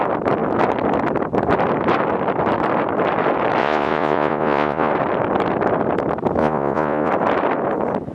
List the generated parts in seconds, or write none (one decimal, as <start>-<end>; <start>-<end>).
3.6-4.9; 6.4-7.1